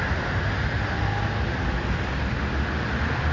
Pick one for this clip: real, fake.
real